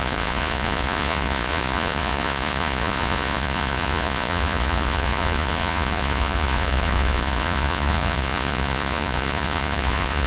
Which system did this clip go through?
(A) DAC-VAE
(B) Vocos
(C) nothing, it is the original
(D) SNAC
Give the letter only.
B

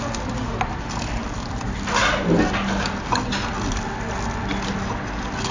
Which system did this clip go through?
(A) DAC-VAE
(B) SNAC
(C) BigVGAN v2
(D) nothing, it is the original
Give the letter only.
D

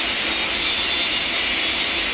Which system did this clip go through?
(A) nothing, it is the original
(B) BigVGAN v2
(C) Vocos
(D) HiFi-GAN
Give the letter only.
A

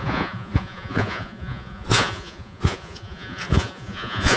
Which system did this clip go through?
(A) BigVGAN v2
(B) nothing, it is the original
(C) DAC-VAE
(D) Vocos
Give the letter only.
D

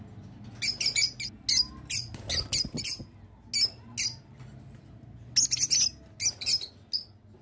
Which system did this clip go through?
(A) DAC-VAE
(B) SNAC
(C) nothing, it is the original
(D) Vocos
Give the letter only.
C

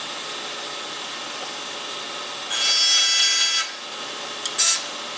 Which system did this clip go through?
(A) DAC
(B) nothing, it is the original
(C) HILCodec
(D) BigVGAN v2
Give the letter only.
B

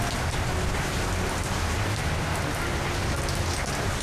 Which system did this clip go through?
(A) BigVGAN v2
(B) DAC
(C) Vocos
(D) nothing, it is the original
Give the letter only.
D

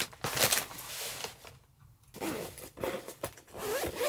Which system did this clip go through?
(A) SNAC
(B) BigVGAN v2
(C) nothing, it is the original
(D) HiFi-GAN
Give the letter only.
C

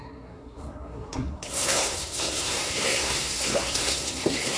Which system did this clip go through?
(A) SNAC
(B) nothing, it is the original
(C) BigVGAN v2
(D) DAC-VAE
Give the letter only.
A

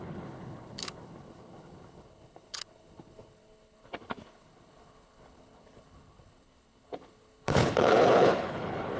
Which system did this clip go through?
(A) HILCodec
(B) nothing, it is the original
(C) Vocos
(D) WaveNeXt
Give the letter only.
A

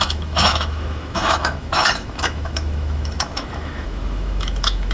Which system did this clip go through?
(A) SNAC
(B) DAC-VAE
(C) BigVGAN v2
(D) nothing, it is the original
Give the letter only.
B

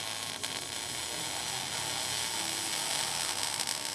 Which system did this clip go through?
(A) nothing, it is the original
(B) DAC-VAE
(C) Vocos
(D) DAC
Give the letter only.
A